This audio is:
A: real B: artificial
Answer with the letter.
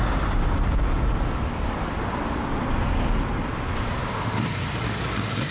A